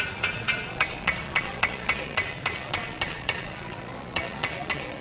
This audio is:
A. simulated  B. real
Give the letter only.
A